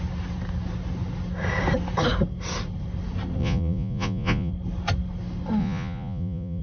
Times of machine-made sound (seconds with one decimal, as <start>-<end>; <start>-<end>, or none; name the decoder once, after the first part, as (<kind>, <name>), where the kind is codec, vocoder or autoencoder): 3.4-4.5 (vocoder, Vocos); 5.6-6.6